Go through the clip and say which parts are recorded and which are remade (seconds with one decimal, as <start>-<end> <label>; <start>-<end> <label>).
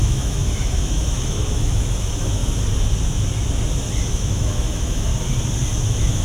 0.0-2.4 remade; 2.4-4.1 recorded; 4.1-5.1 remade; 5.1-5.8 recorded; 5.8-6.2 remade